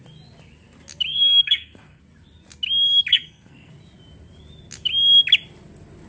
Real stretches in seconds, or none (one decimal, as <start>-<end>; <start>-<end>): 0.0-1.1; 2.0-3.1; 3.7-6.1